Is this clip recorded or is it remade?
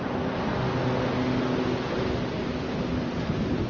recorded